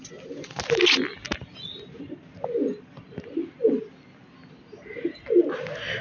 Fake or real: real